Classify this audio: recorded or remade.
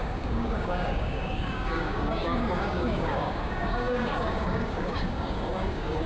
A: remade